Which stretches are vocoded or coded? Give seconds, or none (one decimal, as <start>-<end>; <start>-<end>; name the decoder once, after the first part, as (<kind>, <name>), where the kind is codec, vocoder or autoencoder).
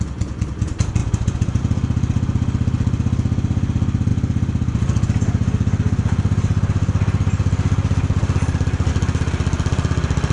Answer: 1.0-1.6 (vocoder, BigVGAN v2)